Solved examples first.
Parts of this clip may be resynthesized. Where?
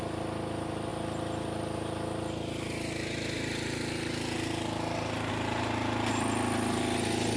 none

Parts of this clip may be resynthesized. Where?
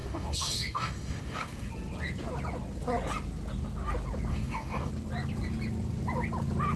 0.0-1.7 (codec, DAC); 4.3-4.9